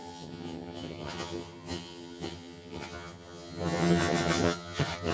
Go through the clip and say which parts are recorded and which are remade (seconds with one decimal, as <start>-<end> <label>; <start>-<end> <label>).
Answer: 0.0-5.1 remade